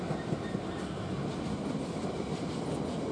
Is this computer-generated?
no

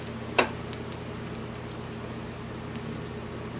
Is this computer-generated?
no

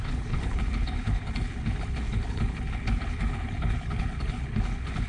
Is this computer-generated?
yes